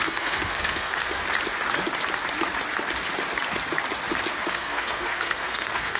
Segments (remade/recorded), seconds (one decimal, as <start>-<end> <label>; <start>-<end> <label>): 0.0-1.2 remade; 1.2-4.5 recorded; 4.5-6.0 remade